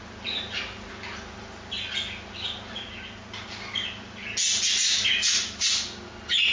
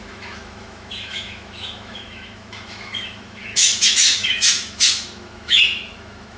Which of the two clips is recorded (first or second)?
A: first